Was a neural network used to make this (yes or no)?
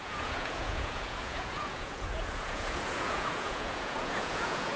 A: yes